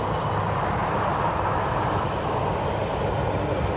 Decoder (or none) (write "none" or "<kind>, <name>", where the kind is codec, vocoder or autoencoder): none